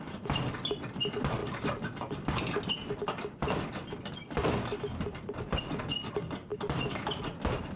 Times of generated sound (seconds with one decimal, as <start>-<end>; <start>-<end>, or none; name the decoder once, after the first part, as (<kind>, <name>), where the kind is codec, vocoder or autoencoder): 6.5-7.2 (vocoder, BigVGAN v2)